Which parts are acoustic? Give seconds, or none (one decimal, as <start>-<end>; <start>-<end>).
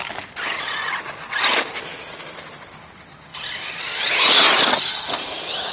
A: 0.0-3.3; 3.8-5.7